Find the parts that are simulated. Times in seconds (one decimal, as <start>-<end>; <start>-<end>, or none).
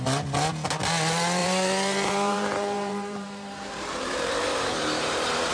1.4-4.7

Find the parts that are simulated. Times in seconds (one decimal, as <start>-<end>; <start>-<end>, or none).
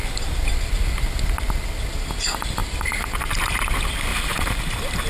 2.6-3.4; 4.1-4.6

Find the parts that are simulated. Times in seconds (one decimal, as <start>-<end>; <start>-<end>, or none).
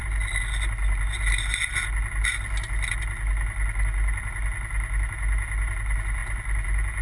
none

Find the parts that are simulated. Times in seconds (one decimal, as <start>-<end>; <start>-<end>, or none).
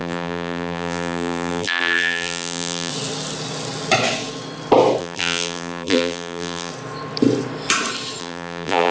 0.0-2.9; 5.0-6.7; 8.2-8.9